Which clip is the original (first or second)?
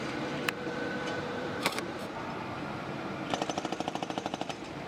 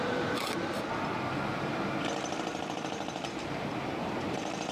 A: second